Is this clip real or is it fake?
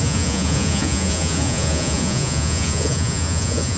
fake